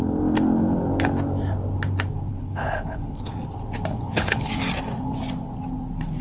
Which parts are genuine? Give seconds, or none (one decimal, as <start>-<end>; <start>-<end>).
0.0-2.3; 3.3-3.9; 4.5-6.2